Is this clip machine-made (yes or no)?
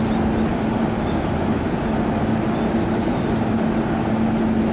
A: no